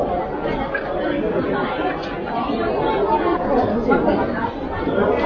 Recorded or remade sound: recorded